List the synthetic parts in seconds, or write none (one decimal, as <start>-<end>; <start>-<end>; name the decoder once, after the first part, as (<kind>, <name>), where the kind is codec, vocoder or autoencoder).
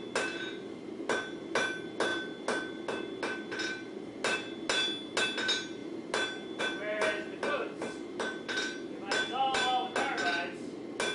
none